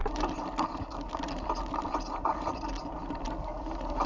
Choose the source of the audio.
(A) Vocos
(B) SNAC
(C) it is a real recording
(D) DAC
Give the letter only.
C